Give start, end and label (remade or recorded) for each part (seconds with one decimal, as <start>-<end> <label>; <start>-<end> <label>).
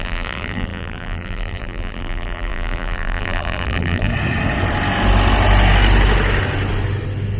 0.0-4.1 remade; 4.1-7.4 recorded